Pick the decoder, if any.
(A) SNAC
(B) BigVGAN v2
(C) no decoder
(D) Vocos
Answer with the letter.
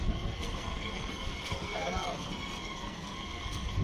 A